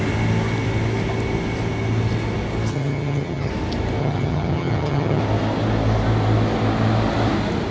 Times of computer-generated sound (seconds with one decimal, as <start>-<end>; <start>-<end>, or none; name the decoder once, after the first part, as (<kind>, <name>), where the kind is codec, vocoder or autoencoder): 2.7-3.5 (vocoder, HiFi-GAN); 4.0-5.2